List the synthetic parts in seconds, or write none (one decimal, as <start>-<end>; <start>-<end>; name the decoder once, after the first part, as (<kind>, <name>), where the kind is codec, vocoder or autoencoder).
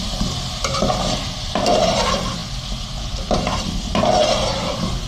none